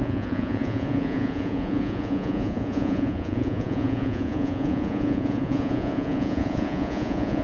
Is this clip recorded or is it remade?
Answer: remade